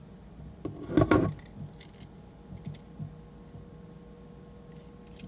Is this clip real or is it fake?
real